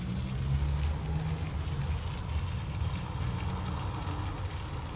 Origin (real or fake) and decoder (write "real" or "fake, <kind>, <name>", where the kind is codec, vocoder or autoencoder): real